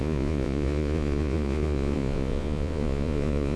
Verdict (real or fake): fake